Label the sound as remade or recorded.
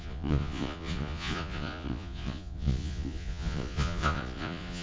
remade